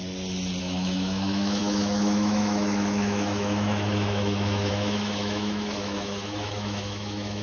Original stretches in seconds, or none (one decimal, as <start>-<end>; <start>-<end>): 0.0-0.6